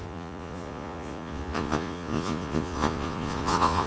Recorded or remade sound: remade